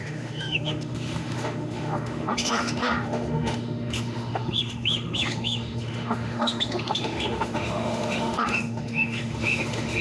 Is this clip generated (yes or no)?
yes